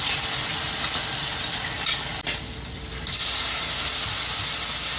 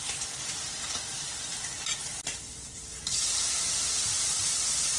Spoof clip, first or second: second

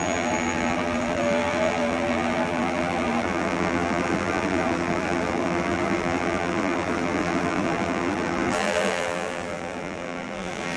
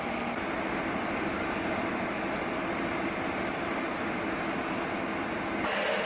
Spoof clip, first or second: first